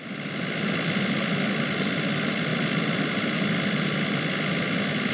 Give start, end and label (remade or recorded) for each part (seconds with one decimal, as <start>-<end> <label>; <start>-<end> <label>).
0.0-5.1 remade